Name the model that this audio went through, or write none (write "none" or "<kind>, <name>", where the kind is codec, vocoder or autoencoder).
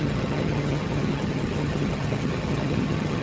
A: vocoder, HiFi-GAN